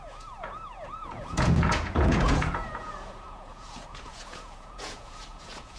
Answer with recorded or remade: remade